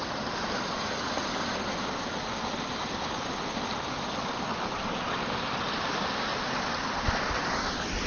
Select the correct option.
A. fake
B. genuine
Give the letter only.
B